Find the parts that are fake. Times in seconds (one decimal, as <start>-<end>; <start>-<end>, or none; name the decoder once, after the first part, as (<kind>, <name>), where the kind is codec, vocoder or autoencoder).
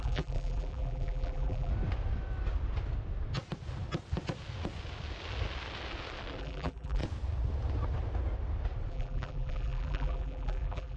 0.0-1.7 (vocoder, BigVGAN v2); 6.4-7.0; 8.9-11.0